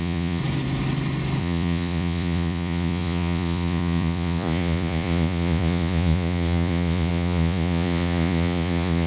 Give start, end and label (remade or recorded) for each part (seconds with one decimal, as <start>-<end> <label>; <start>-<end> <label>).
0.0-0.4 remade; 0.4-1.4 recorded; 1.4-9.1 remade